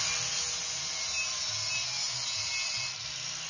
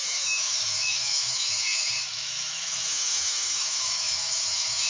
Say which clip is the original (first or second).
first